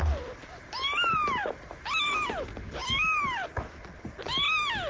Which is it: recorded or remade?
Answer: recorded